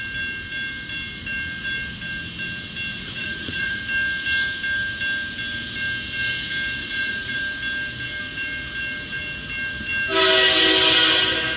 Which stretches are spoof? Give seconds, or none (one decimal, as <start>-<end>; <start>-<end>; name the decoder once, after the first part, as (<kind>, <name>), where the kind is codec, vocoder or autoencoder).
2.9-3.8 (vocoder, Vocos); 6.8-7.4